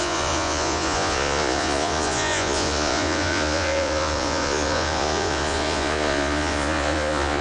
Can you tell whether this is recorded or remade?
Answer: remade